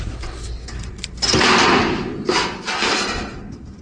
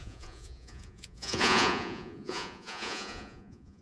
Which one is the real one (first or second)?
first